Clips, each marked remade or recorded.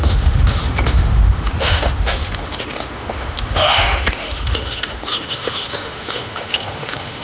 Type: remade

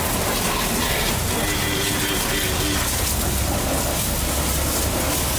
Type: recorded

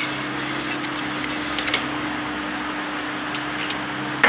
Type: recorded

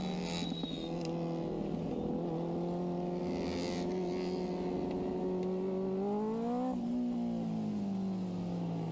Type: recorded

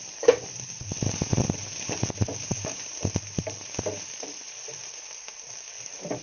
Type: remade